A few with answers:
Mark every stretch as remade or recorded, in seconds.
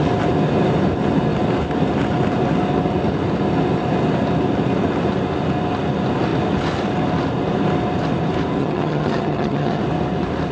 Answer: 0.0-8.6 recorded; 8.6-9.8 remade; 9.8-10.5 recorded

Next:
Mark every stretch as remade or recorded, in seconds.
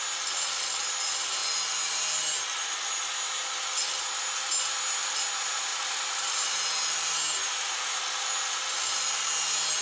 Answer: 0.0-9.8 recorded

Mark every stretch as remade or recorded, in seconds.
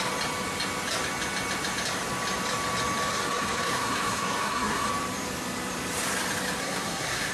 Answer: 0.0-3.1 recorded; 3.1-4.9 remade; 4.9-6.6 recorded; 6.6-7.3 remade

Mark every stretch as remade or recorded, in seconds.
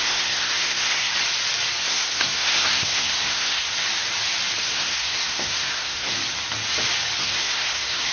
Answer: 0.0-1.1 remade; 1.1-1.8 recorded; 1.8-3.7 remade; 3.7-4.6 recorded; 4.6-6.1 remade; 6.1-7.2 recorded; 7.2-8.1 remade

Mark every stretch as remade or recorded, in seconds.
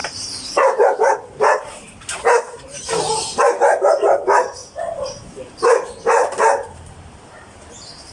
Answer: 0.0-3.0 remade; 3.0-6.2 recorded; 6.2-8.1 remade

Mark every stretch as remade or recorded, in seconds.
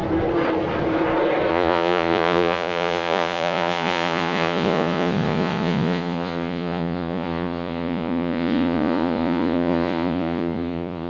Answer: 0.0-1.5 recorded; 1.5-11.1 remade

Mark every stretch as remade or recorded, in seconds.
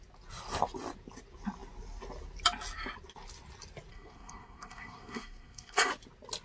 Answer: 0.0-3.9 recorded; 3.9-5.9 remade; 5.9-6.4 recorded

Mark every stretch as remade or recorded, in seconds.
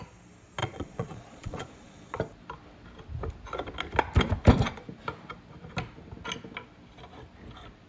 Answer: 0.0-0.6 recorded; 0.6-2.2 remade; 2.2-7.9 recorded